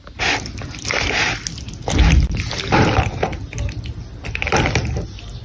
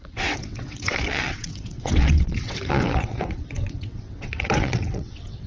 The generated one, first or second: second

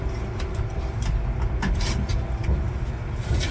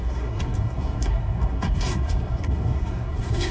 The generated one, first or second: second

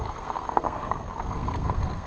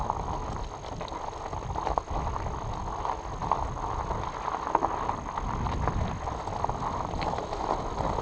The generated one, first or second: first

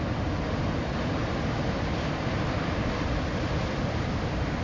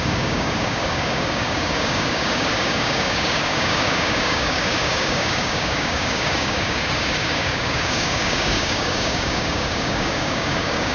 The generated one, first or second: second